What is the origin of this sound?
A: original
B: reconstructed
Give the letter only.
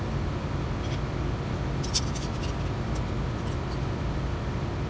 A